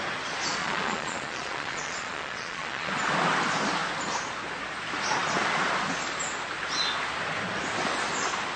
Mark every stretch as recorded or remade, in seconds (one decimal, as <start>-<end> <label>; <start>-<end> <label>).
0.0-0.6 recorded; 0.6-2.9 remade; 2.9-8.6 recorded